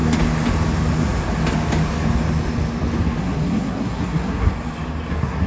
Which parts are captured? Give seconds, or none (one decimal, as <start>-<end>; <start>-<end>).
0.0-3.2; 4.5-5.1

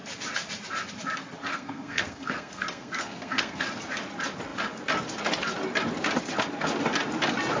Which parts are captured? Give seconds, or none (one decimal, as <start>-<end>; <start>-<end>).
0.0-1.5; 3.6-7.6